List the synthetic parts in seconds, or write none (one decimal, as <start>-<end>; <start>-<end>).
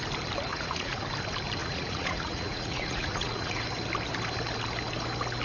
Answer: 0.5-1.0; 1.6-3.6